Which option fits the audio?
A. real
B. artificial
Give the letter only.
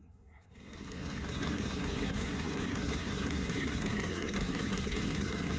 B